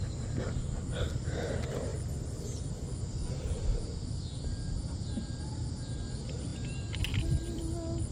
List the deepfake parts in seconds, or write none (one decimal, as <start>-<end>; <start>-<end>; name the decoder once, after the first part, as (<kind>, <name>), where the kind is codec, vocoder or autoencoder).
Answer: none